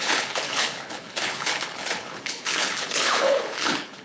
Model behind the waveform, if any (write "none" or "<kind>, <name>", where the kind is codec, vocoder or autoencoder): codec, HILCodec